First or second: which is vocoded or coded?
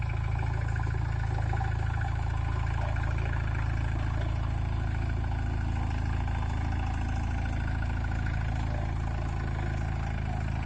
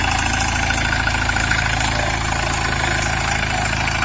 second